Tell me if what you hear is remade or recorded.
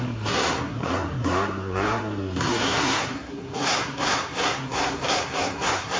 remade